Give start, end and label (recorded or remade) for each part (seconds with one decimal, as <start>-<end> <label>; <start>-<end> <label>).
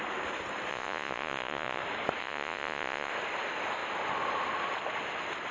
0.0-0.7 recorded; 0.7-1.8 remade; 1.8-2.2 recorded; 2.2-3.1 remade; 3.1-5.5 recorded